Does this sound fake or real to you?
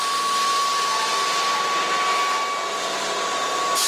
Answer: real